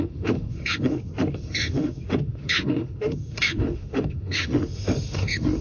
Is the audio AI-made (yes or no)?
yes